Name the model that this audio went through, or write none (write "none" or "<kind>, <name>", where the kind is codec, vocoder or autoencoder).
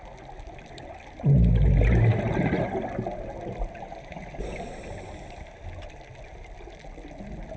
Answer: none